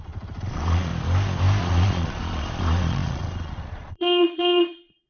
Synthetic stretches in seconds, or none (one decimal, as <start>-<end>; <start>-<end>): 0.0-0.9; 1.6-5.1